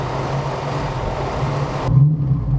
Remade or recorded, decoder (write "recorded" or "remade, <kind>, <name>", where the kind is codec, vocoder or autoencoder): recorded